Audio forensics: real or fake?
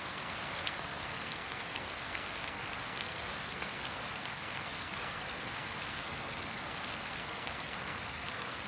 fake